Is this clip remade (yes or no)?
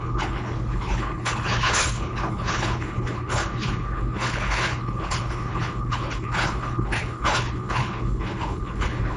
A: yes